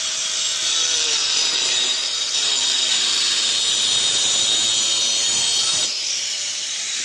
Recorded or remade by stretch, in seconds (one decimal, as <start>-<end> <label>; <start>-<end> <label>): 0.0-0.6 recorded; 0.6-3.2 remade; 3.2-5.5 recorded; 5.5-7.0 remade